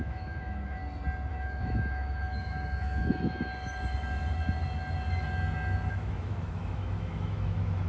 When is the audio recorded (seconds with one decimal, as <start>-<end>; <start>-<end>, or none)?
0.8-1.3; 3.5-5.9